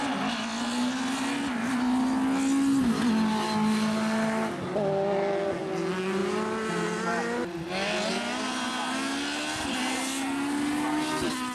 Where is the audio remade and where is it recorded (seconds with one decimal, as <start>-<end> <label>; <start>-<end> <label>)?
0.0-11.5 recorded